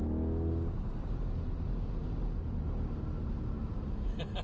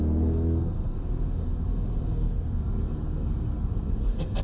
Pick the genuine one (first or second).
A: first